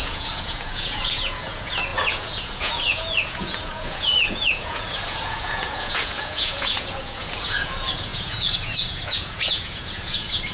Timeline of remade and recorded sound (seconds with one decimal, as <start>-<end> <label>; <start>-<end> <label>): 0.0-10.5 remade

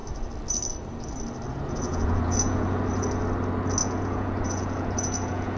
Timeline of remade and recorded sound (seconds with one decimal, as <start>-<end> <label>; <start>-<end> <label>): 0.0-1.5 recorded; 1.5-2.8 remade; 2.8-3.8 recorded; 3.8-5.6 remade

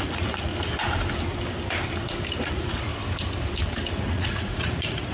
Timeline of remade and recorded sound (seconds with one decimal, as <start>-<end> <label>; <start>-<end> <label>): 0.0-0.5 remade; 0.5-2.4 recorded; 2.4-2.9 remade; 2.9-4.1 recorded; 4.1-5.1 remade

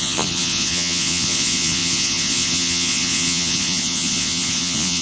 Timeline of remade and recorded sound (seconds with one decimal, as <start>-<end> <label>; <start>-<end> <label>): 0.0-5.0 remade

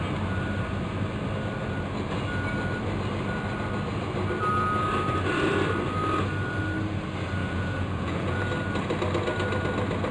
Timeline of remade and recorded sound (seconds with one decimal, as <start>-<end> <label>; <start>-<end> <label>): 0.0-7.4 recorded; 7.4-8.4 remade; 8.4-10.1 recorded